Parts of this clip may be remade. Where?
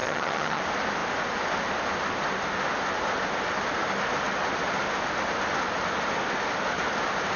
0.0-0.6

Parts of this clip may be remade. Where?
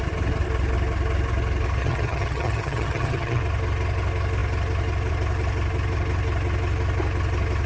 1.8-3.4